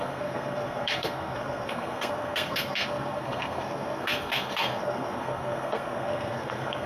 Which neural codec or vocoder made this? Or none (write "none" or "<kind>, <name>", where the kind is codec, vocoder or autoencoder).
codec, SNAC